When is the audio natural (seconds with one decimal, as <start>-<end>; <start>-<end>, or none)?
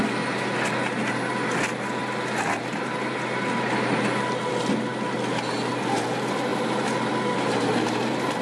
0.0-8.4